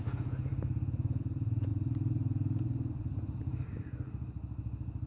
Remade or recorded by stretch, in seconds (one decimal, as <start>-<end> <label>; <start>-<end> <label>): 0.0-0.5 remade; 0.5-1.2 recorded; 1.2-1.7 remade; 1.7-5.1 recorded